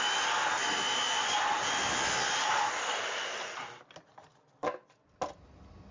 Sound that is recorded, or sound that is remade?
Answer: recorded